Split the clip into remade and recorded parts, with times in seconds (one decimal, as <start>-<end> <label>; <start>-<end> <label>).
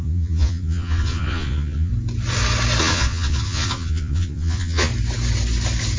0.0-1.9 remade; 1.9-2.8 recorded; 2.8-4.9 remade; 4.9-6.0 recorded